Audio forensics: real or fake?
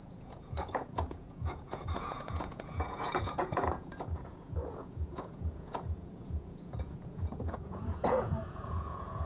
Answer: fake